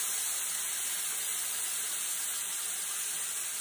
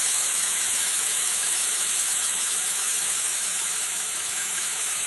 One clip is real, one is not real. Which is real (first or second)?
first